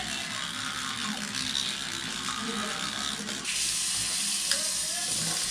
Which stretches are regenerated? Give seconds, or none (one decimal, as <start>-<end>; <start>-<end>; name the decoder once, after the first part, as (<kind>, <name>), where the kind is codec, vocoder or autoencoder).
none